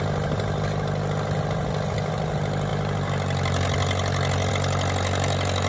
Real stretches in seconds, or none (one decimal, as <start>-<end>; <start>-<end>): 0.0-5.7